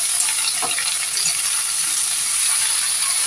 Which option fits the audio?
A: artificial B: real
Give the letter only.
B